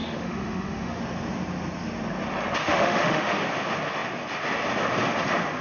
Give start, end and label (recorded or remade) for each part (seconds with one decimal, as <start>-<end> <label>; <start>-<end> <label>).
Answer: 0.0-1.0 remade; 1.0-2.6 recorded; 2.6-3.4 remade; 3.4-5.6 recorded